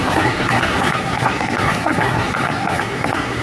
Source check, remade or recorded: remade